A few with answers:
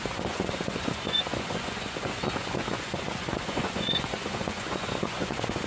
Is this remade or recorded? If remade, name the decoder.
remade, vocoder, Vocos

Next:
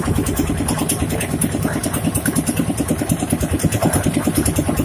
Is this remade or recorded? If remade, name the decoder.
remade, vocoder, BigVGAN v2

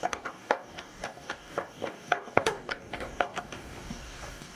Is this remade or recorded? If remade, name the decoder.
remade, codec, DAC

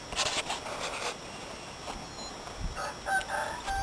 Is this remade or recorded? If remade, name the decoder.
recorded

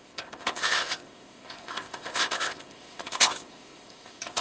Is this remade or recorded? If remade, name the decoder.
remade, codec, ZipCodec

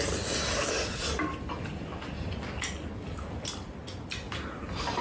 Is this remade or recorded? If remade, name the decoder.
recorded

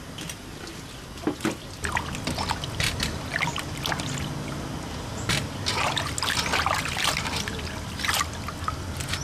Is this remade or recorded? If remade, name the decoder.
recorded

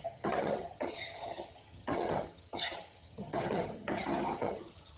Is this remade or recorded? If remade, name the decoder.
remade, vocoder, HiFi-GAN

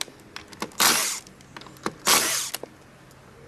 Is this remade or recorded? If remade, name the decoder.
recorded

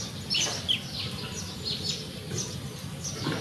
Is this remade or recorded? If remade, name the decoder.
recorded